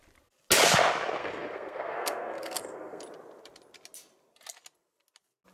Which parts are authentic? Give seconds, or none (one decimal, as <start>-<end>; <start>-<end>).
0.0-1.2; 3.0-5.5